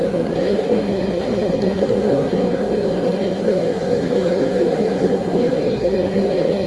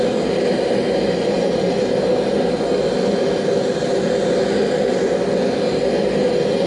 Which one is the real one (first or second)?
second